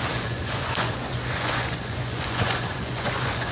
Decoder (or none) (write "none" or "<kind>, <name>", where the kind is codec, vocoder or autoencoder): vocoder, Vocos